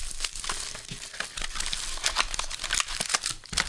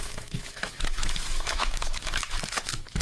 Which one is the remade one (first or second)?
second